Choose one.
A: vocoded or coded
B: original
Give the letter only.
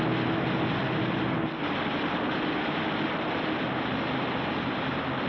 B